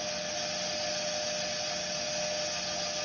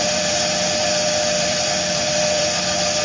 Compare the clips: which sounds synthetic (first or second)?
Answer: second